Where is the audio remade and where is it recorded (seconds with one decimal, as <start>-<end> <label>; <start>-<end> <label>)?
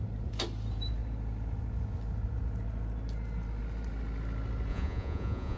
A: 0.0-4.7 recorded; 4.7-5.6 remade